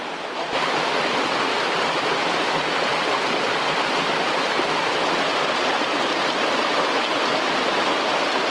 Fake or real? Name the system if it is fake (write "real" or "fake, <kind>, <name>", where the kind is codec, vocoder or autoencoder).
real